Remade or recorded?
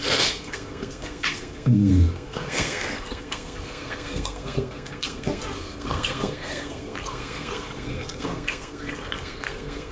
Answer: remade